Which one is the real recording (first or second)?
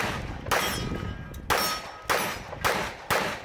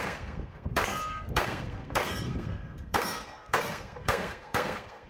first